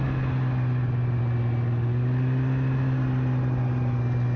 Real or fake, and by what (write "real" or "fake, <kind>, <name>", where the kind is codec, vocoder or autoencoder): real